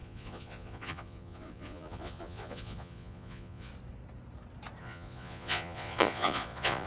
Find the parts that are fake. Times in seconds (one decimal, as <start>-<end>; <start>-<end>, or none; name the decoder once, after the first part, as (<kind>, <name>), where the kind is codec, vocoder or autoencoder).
0.0-3.7 (vocoder, Vocos); 4.8-6.9